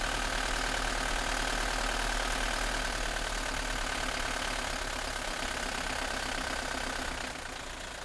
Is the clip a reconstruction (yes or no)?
no